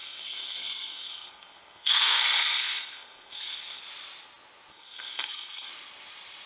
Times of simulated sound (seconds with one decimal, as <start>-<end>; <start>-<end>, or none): 0.0-3.8; 4.7-5.7